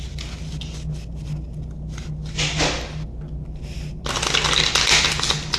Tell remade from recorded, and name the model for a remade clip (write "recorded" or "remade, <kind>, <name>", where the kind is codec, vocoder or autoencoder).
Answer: recorded